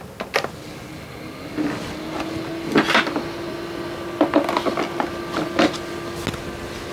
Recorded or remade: recorded